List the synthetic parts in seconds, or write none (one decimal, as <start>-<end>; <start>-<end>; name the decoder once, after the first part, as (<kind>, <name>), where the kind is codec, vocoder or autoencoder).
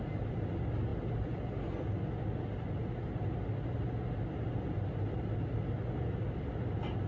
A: none